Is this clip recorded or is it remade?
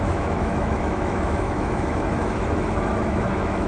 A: remade